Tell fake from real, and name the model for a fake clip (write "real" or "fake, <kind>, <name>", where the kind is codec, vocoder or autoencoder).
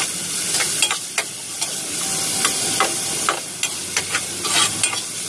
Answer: real